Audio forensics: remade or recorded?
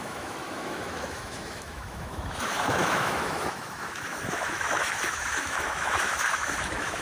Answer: remade